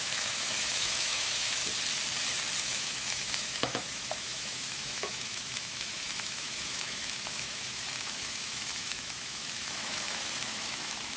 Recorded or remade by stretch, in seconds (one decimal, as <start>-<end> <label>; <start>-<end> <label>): 0.0-1.6 remade; 1.6-2.6 recorded; 2.6-11.2 remade